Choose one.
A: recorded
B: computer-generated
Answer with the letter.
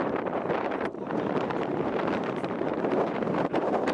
B